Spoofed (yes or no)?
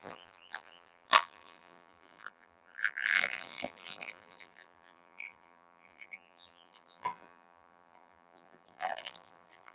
yes